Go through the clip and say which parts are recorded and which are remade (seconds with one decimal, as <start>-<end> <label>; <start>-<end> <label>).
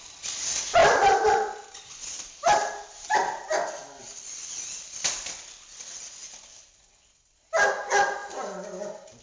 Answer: 0.0-8.2 recorded; 8.2-9.2 remade